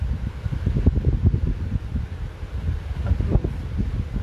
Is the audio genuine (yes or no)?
yes